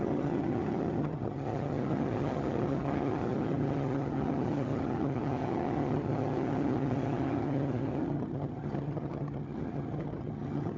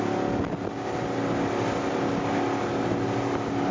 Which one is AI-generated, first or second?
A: first